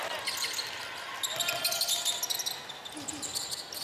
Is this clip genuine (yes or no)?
yes